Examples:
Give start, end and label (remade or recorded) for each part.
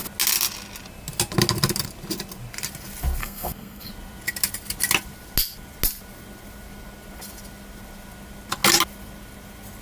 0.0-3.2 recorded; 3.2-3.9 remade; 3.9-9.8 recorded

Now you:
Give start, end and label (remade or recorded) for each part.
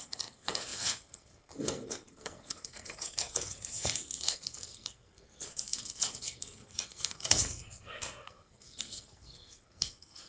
0.0-10.3 remade